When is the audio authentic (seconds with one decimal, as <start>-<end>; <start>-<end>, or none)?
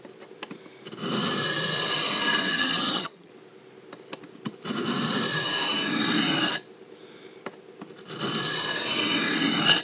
0.0-2.5; 3.3-9.8